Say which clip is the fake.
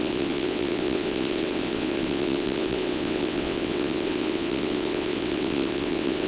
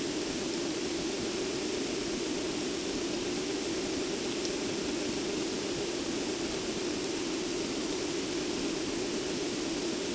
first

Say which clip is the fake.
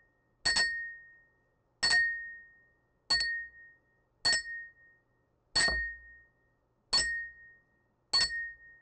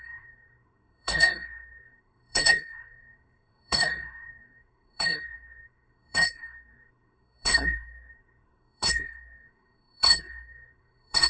second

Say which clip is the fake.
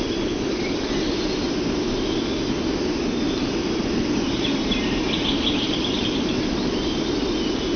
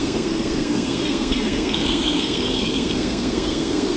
second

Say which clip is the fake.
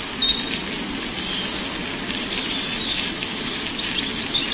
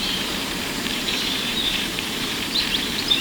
second